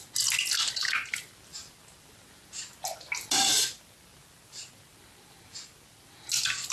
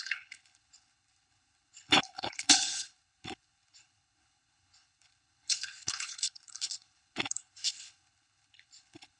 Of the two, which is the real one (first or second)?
first